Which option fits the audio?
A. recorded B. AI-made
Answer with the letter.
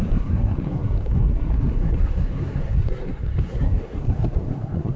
B